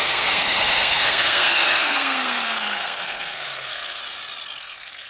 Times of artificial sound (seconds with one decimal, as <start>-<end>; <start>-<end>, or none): 0.0-4.0; 4.6-5.1